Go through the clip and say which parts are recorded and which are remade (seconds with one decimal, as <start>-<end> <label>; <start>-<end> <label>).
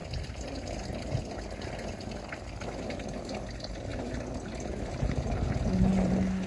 0.0-6.5 recorded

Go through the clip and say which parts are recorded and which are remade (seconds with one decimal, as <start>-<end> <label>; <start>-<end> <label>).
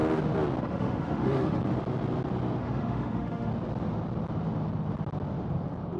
0.0-0.6 recorded; 0.6-1.6 remade; 1.6-2.6 recorded; 2.6-3.5 remade; 3.5-6.0 recorded